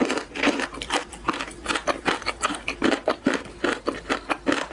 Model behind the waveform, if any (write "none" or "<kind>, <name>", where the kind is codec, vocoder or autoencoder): none